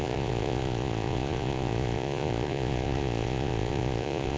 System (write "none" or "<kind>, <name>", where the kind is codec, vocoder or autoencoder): vocoder, Vocos